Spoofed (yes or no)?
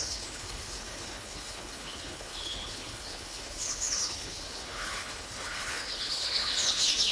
yes